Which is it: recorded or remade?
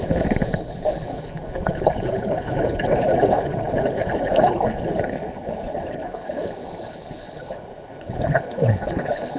remade